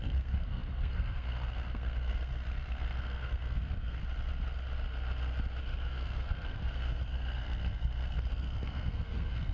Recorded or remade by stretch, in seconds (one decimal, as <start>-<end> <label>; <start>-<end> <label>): 0.0-4.0 remade; 4.0-5.6 recorded; 5.6-9.5 remade